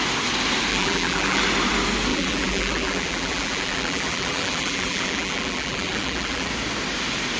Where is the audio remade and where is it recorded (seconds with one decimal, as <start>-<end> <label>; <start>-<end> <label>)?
0.0-0.7 recorded; 0.7-1.4 remade; 1.4-2.1 recorded; 2.1-6.5 remade; 6.5-7.4 recorded